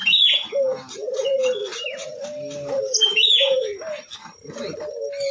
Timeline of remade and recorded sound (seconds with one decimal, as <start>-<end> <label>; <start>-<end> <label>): 0.0-1.6 remade; 1.6-2.8 recorded; 2.8-3.7 remade; 3.7-5.3 recorded